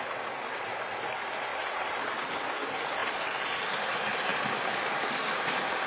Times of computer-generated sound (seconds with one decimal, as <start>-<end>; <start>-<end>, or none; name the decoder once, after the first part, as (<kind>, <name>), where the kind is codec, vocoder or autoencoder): 1.5-2.3 (vocoder, BigVGAN v2); 3.0-3.5